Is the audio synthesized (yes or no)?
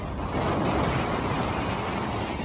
no